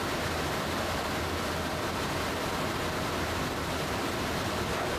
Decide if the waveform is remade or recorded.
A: recorded